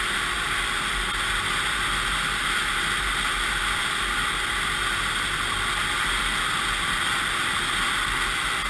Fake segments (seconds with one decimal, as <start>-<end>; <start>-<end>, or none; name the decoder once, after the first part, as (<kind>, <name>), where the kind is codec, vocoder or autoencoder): none